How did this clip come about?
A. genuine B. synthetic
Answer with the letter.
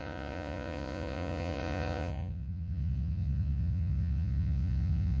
B